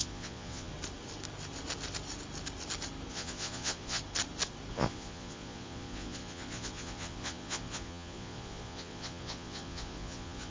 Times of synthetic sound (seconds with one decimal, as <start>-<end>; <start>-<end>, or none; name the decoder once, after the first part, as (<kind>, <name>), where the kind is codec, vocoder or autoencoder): 0.0-0.7 (vocoder, Vocos); 3.1-4.0; 4.7-10.5